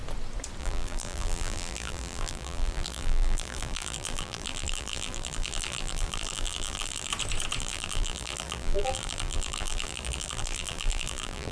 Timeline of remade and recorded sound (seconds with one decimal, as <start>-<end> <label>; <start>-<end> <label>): 0.0-0.6 recorded; 0.6-7.1 remade; 7.1-7.6 recorded; 7.6-11.5 remade

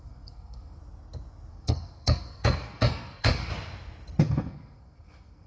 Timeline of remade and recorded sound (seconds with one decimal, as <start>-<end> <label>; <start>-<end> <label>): 0.0-0.8 remade; 0.8-1.5 recorded; 1.5-3.5 remade; 3.5-4.2 recorded; 4.2-5.5 remade